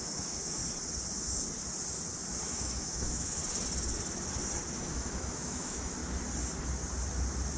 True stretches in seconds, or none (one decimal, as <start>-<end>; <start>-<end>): 0.6-2.5; 3.4-4.8; 6.0-7.6